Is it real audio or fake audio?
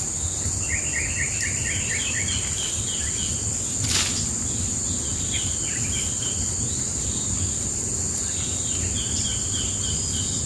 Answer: real